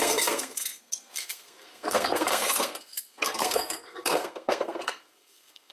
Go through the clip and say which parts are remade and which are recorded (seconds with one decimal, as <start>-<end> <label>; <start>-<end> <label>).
0.0-5.7 remade